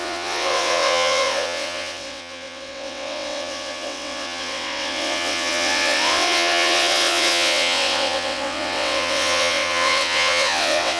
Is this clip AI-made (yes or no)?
yes